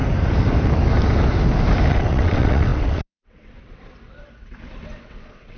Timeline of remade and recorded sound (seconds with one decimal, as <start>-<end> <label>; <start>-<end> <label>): 0.0-1.9 recorded; 1.9-5.6 remade